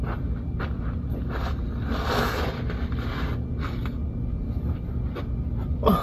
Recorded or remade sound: recorded